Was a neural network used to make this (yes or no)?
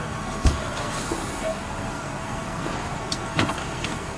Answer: yes